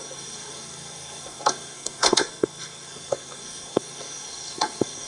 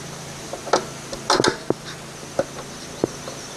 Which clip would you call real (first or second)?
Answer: second